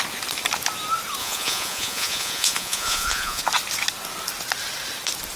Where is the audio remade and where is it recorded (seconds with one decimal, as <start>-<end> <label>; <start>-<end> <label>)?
0.0-1.2 recorded; 1.2-3.4 remade; 3.4-5.4 recorded

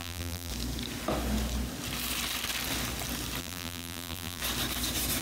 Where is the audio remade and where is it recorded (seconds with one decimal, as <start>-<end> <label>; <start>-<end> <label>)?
0.0-0.5 remade; 0.5-3.4 recorded; 3.4-4.4 remade; 4.4-5.2 recorded

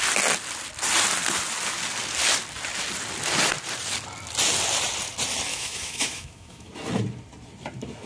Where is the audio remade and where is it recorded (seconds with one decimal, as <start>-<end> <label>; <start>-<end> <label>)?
0.0-5.5 recorded; 5.5-6.7 remade; 6.7-8.1 recorded